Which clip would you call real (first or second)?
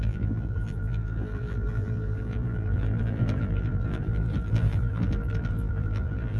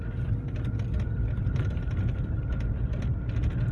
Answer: second